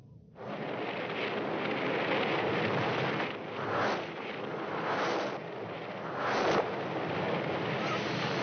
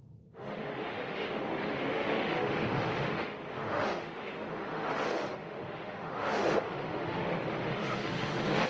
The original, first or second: first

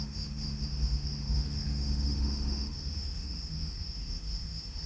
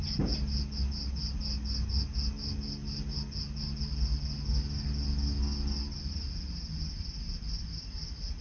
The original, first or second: second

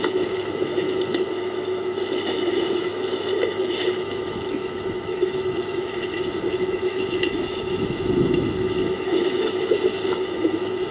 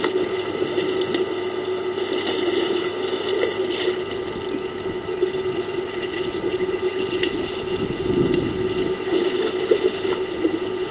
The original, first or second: second